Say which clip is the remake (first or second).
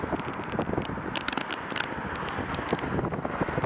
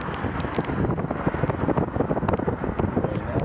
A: second